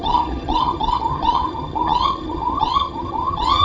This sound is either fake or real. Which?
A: fake